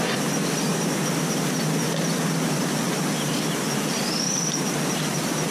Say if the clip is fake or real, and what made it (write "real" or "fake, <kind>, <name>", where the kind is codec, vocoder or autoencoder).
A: real